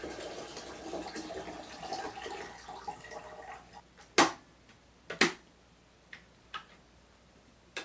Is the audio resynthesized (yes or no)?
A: no